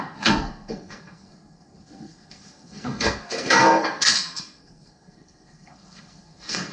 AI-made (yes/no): yes